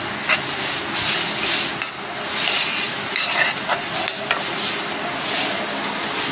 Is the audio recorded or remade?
recorded